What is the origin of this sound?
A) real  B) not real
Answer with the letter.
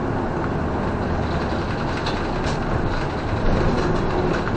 A